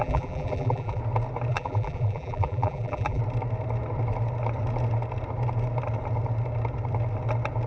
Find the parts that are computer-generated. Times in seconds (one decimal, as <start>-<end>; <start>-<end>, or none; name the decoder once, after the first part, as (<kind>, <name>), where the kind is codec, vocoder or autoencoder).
0.0-1.0 (vocoder, BigVGAN v2); 1.5-3.2

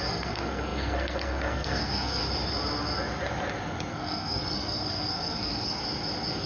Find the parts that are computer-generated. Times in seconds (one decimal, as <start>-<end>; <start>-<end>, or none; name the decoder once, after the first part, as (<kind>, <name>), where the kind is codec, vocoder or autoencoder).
0.0-2.2 (codec, SNAC); 3.9-5.8

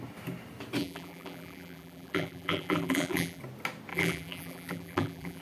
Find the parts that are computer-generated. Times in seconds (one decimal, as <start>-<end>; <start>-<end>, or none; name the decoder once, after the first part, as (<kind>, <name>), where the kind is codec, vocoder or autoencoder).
0.8-3.4 (vocoder, BigVGAN v2); 3.9-5.4

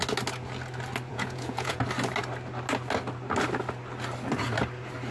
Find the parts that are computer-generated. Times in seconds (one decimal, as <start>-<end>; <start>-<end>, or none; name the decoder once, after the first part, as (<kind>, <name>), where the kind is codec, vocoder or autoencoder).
1.1-1.8 (vocoder, Vocos)

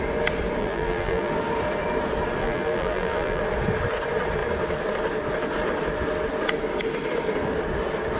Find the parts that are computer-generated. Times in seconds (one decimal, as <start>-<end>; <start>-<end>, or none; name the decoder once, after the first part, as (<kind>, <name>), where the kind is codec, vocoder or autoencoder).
0.6-1.3 (vocoder, BigVGAN v2); 2.4-3.4